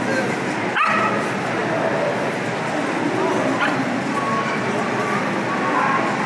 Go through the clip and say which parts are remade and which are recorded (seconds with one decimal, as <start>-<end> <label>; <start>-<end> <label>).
0.0-6.3 recorded